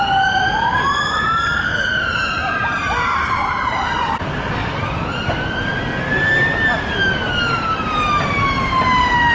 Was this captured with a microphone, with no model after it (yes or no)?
yes